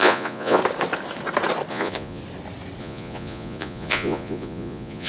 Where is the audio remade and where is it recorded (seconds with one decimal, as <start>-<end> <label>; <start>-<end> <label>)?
0.0-0.6 remade; 0.6-1.7 recorded; 1.7-2.2 remade; 2.2-2.8 recorded; 2.8-5.1 remade